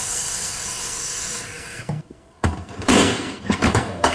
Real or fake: fake